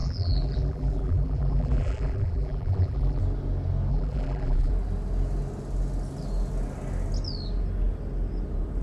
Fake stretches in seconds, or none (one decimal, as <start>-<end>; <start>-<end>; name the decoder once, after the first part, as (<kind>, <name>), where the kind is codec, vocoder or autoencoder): 0.0-3.2 (vocoder, BigVGAN v2); 3.9-4.7